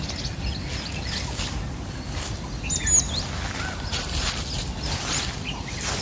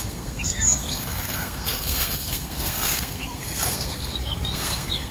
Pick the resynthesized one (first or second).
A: second